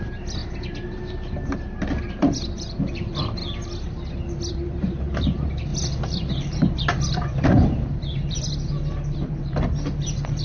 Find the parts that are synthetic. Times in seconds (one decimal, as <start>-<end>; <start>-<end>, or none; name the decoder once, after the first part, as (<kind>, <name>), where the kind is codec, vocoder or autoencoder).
0.0-0.4 (vocoder, BigVGAN v2); 2.1-3.4; 4.5-10.4